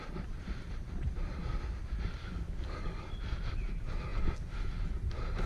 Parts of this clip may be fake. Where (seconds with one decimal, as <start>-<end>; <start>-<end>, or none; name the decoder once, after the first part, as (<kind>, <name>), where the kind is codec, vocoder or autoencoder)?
2.2-3.1 (codec, DAC)